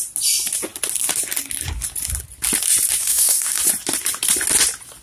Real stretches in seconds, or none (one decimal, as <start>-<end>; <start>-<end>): 0.0-3.0; 3.6-5.0